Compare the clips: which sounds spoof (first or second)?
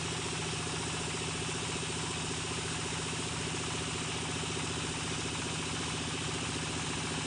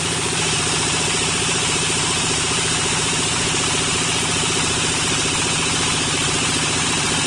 second